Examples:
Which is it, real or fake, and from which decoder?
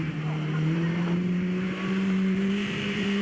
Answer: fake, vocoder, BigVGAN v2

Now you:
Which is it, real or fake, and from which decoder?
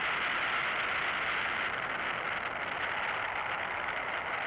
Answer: real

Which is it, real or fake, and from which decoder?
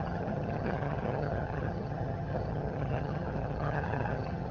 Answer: fake, vocoder, HiFi-GAN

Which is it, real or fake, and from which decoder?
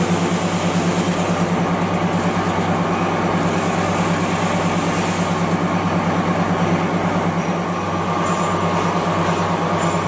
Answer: real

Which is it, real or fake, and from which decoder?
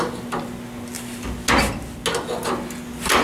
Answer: real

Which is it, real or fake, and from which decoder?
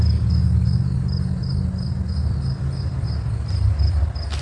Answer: real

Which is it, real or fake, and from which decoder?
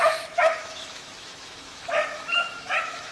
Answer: fake, autoencoder, DAC-VAE